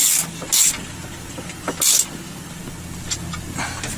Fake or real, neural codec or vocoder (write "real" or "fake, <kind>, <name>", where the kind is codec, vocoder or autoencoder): real